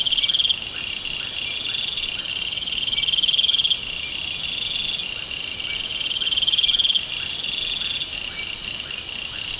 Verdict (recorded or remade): recorded